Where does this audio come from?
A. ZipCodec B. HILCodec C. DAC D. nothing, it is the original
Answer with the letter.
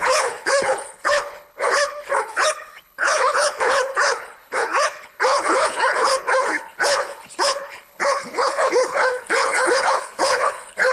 B